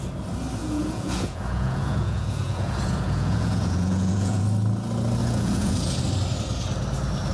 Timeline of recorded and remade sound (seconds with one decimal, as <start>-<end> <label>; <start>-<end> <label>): 0.0-0.6 recorded; 0.6-4.4 remade; 4.4-5.2 recorded; 5.2-6.0 remade; 6.0-7.3 recorded